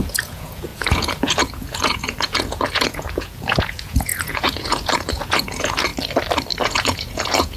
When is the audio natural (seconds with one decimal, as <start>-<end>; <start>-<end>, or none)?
5.9-6.6